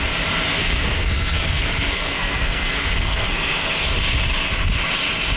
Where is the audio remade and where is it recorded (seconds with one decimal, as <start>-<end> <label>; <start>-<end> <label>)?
0.0-0.6 recorded; 0.6-3.8 remade; 3.8-5.4 recorded